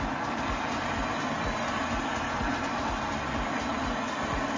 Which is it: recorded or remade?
recorded